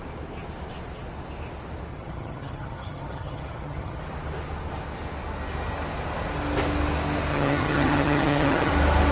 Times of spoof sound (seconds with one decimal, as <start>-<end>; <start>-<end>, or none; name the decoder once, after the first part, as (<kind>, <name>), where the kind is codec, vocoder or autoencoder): 1.9-4.0 (vocoder, HiFi-GAN); 7.3-8.7